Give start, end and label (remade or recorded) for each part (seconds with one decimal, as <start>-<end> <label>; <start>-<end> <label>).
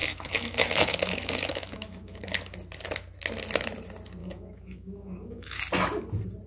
0.0-2.2 remade; 2.2-4.2 recorded; 4.2-5.6 remade; 5.6-6.5 recorded